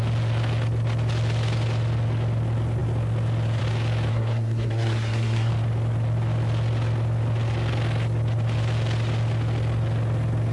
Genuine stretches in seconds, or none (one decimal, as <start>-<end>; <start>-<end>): 0.0-4.1; 5.5-10.5